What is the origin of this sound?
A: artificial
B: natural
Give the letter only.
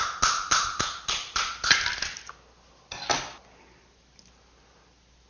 B